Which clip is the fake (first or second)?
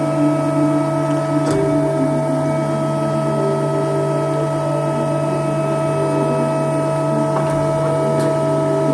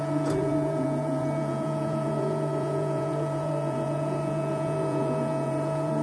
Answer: second